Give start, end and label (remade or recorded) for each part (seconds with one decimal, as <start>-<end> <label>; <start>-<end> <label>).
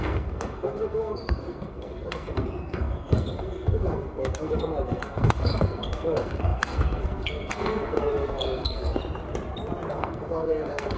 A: 0.0-9.0 remade; 9.0-9.9 recorded; 9.9-11.0 remade